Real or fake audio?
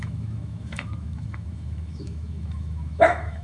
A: fake